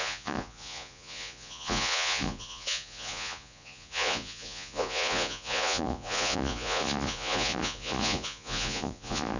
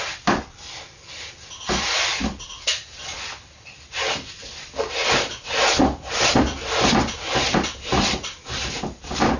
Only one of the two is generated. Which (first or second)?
first